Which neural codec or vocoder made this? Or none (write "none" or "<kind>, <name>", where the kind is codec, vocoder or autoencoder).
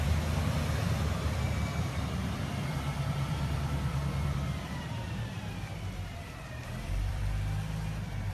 vocoder, BigVGAN v2